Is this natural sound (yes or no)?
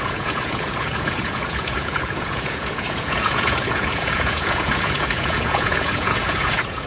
no